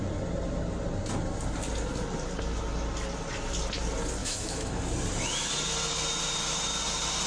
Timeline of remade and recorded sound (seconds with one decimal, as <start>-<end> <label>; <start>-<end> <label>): 0.0-4.2 recorded; 4.2-4.8 remade; 4.8-7.3 recorded